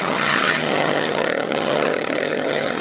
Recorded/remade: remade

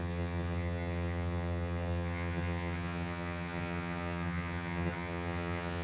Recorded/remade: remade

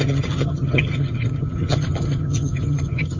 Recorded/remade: remade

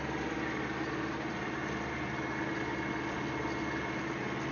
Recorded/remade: recorded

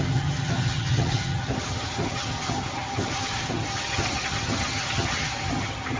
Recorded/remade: remade